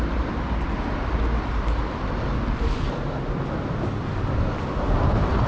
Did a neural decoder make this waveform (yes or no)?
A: no